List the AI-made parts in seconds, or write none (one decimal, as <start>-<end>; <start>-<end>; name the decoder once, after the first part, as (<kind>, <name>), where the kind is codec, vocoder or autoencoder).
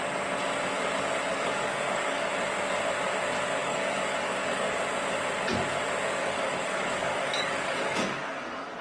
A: 1.3-2.3 (codec, DAC); 3.6-4.8; 6.2-8.8